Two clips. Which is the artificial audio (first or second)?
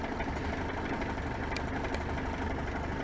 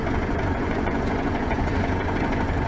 second